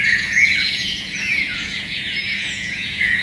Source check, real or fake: fake